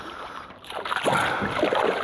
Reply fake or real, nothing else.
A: real